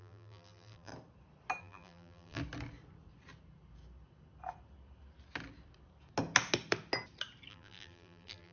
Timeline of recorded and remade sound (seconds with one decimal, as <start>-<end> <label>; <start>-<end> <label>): 0.0-0.9 remade; 0.9-1.6 recorded; 1.6-2.4 remade; 2.4-7.5 recorded; 7.5-8.5 remade